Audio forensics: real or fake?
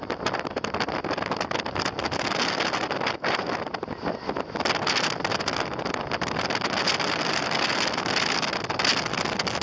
real